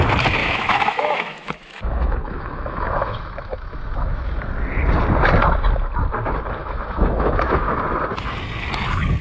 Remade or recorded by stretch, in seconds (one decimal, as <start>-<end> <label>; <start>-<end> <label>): 0.0-0.4 recorded; 0.4-4.5 remade; 4.5-6.6 recorded; 6.6-7.7 remade; 7.7-9.2 recorded